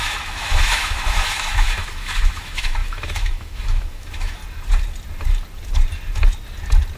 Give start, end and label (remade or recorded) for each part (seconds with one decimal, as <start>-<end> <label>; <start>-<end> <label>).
0.0-4.4 remade; 4.4-7.0 recorded

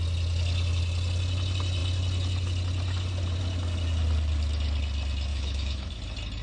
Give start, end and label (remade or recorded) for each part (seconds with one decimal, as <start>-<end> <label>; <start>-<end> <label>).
0.0-5.3 recorded; 5.3-6.0 remade; 6.0-6.4 recorded

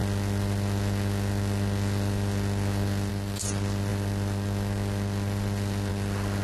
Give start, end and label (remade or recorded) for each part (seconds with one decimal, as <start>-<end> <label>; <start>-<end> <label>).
0.0-6.4 recorded